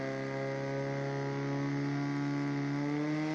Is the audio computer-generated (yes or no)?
no